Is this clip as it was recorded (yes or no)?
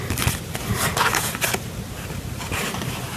yes